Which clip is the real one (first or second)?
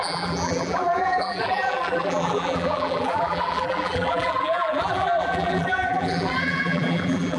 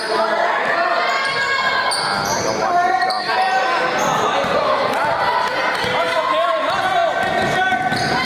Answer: second